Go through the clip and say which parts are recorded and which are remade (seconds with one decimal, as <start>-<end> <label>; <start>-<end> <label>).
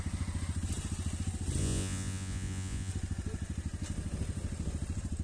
0.0-1.6 recorded; 1.6-2.9 remade; 2.9-5.2 recorded